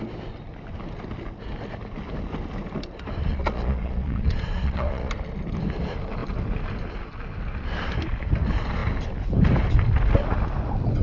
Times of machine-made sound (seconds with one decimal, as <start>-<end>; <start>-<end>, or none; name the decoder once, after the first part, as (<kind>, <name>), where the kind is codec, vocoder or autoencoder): 3.3-5.1 (vocoder, Vocos)